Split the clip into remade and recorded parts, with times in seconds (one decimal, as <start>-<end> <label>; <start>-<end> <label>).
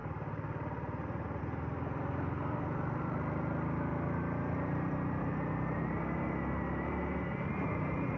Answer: 0.0-8.2 recorded